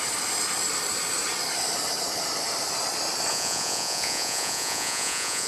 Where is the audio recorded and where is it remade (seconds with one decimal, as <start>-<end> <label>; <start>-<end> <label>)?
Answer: 0.0-3.3 recorded; 3.3-5.5 remade